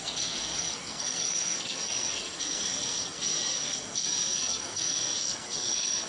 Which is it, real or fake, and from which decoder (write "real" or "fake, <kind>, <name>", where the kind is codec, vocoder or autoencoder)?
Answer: fake, codec, SNAC